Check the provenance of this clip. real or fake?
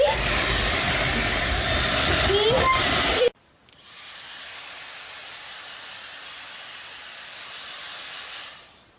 real